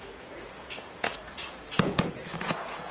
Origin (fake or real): fake